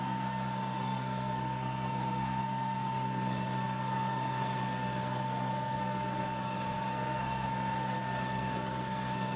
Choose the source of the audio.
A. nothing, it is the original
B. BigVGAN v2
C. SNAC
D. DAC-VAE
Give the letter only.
C